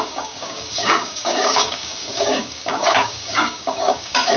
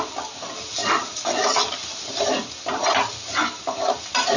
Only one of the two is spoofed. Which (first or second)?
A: first